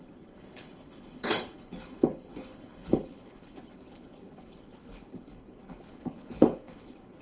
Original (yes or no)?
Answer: no